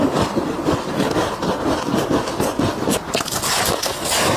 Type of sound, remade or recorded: recorded